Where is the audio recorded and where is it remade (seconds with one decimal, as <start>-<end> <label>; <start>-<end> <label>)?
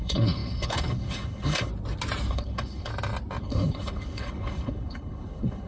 0.0-1.7 remade; 1.7-2.3 recorded; 2.3-2.9 remade; 2.9-3.4 recorded; 3.4-5.7 remade